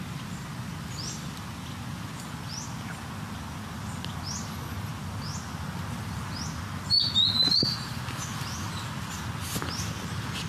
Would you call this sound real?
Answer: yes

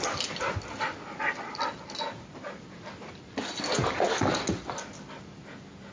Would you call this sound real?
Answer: yes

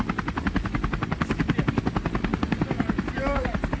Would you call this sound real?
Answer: yes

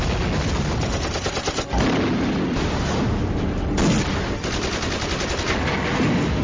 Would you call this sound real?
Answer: yes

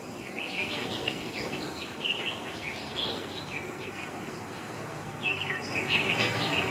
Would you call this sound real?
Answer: no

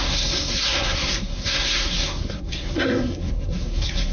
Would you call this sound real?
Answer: no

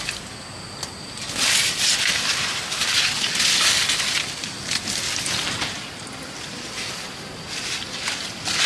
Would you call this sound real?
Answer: yes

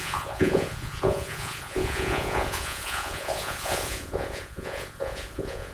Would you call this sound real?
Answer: no